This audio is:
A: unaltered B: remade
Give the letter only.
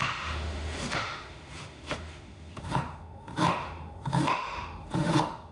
B